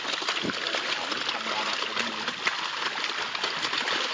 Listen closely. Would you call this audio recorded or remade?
recorded